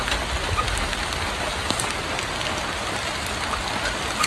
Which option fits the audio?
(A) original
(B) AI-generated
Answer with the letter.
A